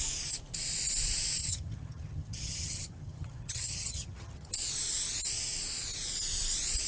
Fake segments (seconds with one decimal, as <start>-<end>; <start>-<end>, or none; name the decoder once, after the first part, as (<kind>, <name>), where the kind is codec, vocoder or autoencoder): 1.4-4.5 (vocoder, HiFi-GAN)